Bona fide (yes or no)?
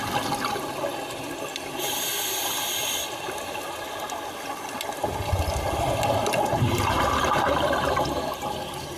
yes